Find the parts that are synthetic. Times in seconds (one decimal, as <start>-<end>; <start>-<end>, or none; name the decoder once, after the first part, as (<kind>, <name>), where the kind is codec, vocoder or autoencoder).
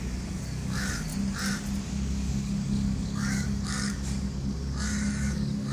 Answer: 0.0-1.1 (codec, DAC); 1.9-5.7